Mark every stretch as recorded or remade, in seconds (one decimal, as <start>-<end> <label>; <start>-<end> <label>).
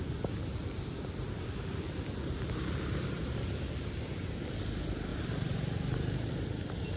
0.0-4.2 remade; 4.2-5.1 recorded; 5.1-6.3 remade; 6.3-7.0 recorded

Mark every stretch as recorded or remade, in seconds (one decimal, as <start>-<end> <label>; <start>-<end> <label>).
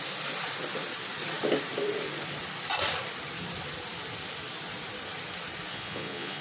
0.0-5.7 recorded; 5.7-6.4 remade